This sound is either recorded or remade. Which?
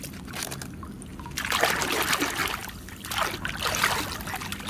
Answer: recorded